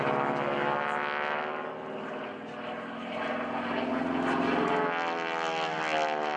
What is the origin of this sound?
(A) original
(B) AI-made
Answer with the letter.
A